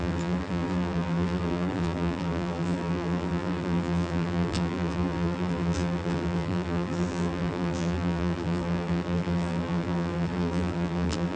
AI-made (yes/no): yes